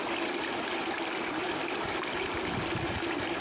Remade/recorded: recorded